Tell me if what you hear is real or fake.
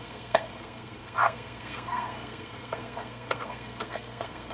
fake